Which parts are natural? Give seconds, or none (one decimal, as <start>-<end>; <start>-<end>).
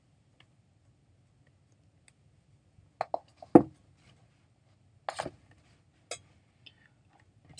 0.0-7.6